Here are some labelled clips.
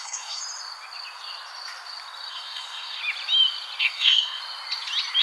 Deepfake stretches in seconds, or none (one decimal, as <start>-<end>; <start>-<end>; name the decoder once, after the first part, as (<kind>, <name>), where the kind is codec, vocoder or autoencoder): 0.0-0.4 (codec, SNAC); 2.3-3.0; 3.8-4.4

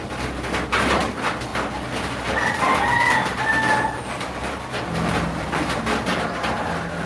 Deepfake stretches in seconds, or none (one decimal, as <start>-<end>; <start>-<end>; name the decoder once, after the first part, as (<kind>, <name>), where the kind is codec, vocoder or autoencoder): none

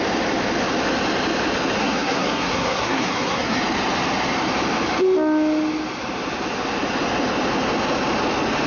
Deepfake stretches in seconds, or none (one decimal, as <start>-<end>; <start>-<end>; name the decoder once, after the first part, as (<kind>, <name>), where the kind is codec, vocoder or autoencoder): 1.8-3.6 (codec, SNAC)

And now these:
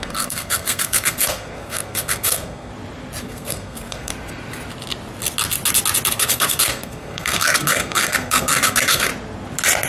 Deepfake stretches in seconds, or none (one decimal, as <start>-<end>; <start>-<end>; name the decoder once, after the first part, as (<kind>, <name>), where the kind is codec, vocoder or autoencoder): 0.0-2.7 (codec, SNAC); 3.2-4.1; 6.1-9.1

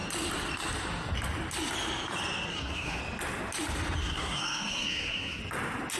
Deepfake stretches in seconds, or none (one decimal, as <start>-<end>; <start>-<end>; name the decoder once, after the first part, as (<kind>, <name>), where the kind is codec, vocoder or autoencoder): 2.5-3.0 (codec, SNAC); 4.0-5.4

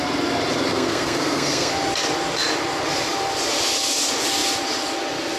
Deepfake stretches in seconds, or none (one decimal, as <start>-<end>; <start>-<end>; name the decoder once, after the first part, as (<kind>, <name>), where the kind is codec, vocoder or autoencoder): 0.7-1.7 (codec, SNAC)

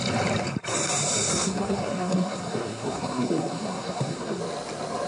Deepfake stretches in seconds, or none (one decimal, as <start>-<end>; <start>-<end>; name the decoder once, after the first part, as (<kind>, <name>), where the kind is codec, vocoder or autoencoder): 1.3-4.4 (codec, SNAC)

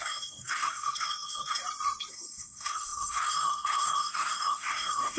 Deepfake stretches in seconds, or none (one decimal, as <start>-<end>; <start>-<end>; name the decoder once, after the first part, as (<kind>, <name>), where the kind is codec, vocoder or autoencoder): 0.0-1.6 (codec, SNAC); 2.1-5.2